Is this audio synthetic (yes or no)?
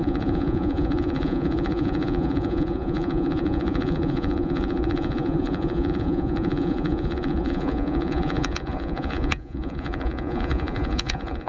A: yes